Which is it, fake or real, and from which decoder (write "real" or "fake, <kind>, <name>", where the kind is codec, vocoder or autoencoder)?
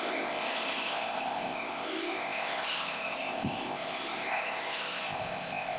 fake, codec, ZipCodec